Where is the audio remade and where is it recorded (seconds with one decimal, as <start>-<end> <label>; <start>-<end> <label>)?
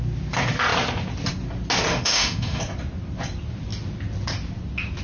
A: 0.0-1.9 recorded; 1.9-2.6 remade; 2.6-5.0 recorded